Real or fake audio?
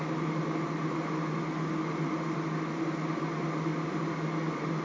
real